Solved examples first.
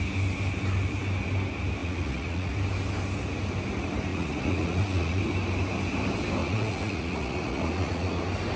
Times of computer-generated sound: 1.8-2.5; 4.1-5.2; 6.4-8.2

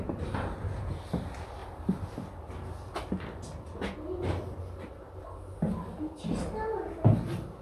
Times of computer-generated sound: none

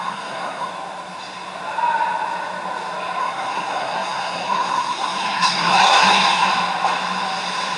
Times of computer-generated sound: 0.0-0.7; 3.2-6.5

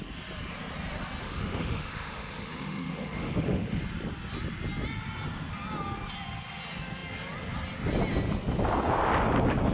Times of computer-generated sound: 1.2-3.8